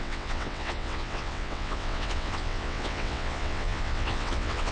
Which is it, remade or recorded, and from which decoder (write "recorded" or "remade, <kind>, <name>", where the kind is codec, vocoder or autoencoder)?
remade, vocoder, WaveNeXt